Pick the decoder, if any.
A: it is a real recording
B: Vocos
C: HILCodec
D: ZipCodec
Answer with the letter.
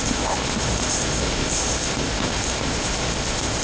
D